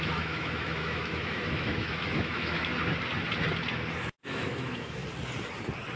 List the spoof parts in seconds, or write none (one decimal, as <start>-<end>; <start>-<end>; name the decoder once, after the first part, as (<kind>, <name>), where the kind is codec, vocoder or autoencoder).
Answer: 0.0-2.7 (autoencoder, DAC-VAE); 4.0-5.0